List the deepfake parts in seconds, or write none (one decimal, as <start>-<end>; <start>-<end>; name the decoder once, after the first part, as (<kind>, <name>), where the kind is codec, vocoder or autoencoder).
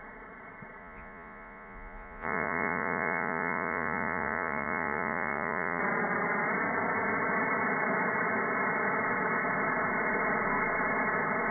0.8-5.8 (vocoder, Vocos)